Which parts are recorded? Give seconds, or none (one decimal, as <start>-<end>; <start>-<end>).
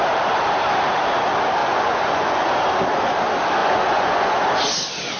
0.0-1.6; 2.5-3.6; 4.3-5.2